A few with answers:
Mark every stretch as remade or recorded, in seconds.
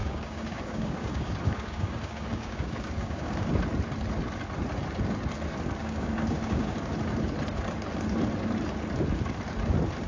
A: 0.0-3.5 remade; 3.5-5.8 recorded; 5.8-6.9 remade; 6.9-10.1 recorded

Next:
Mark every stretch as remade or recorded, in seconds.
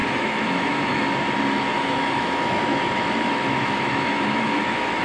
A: 0.0-1.0 remade; 1.0-1.7 recorded; 1.7-5.0 remade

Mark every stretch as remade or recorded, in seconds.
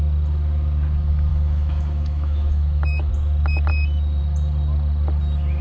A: 0.0-1.3 recorded; 1.3-3.1 remade; 3.1-5.6 recorded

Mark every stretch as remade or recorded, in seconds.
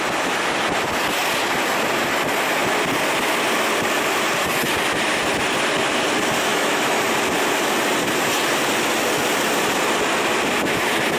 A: 0.0-6.5 recorded; 6.5-7.0 remade; 7.0-11.2 recorded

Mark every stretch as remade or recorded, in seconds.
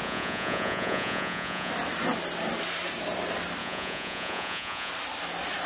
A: 0.0-1.7 remade; 1.7-3.6 recorded; 3.6-4.9 remade; 4.9-5.7 recorded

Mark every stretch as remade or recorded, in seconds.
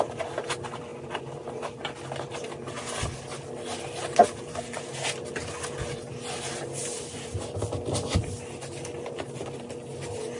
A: 0.0-10.4 recorded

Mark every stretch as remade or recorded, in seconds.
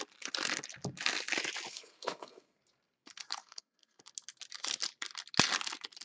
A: 0.0-1.7 recorded; 1.7-2.6 remade; 2.6-3.4 recorded; 3.4-4.0 remade; 4.0-6.0 recorded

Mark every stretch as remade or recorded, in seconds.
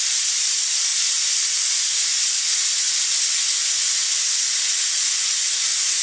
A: 0.0-0.9 remade; 0.9-1.5 recorded; 1.5-2.1 remade; 2.1-6.0 recorded